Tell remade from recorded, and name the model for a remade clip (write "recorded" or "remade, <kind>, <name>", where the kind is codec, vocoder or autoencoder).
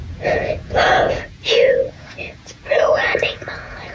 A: remade, vocoder, Vocos